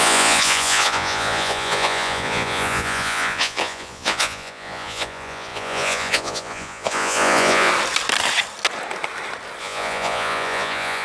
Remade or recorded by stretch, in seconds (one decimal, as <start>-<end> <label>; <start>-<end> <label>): 0.0-7.7 remade; 7.7-9.6 recorded; 9.6-11.0 remade